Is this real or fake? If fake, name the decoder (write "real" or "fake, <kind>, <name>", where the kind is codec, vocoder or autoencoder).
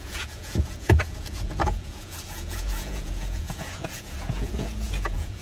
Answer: fake, vocoder, Vocos